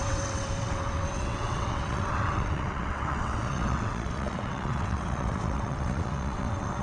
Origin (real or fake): fake